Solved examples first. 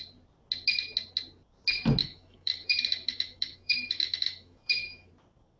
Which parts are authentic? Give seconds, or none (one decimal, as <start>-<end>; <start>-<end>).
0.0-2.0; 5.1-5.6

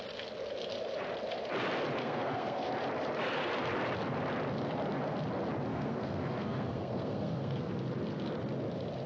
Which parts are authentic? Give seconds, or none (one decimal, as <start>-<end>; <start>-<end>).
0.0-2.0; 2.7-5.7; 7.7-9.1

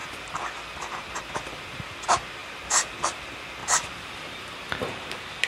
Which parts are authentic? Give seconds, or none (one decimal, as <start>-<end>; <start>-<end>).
0.0-5.5